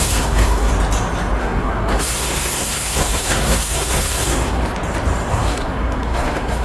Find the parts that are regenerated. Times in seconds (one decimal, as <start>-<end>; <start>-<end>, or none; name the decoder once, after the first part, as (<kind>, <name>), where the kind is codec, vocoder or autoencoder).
0.0-0.7 (codec, SNAC); 1.4-4.6; 5.3-6.6